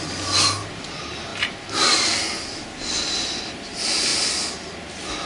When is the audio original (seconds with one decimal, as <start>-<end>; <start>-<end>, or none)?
0.0-5.3